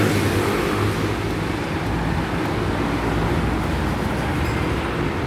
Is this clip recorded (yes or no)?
yes